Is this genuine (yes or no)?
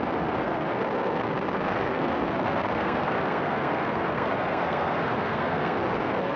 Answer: no